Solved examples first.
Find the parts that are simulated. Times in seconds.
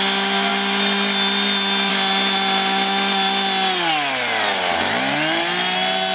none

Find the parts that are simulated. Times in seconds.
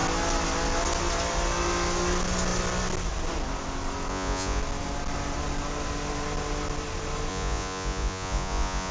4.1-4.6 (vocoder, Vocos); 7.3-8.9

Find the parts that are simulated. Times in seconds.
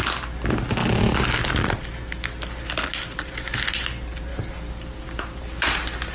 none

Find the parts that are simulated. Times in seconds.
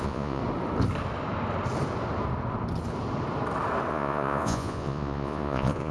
0.0-0.4 (vocoder, Vocos); 3.9-5.9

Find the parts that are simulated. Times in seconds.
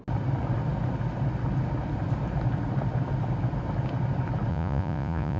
4.5-5.4 (vocoder, Vocos)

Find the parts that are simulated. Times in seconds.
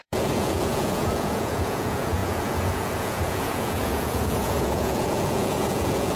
0.0-6.2 (vocoder, Vocos)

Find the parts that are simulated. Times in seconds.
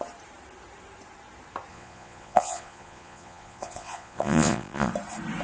1.7-4.9 (vocoder, Vocos)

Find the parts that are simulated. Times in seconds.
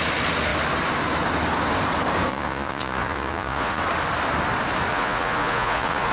2.3-3.8 (vocoder, Vocos); 4.9-6.1